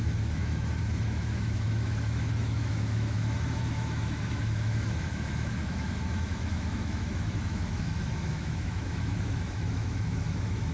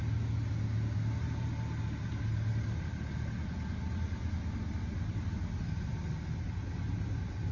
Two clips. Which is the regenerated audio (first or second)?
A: first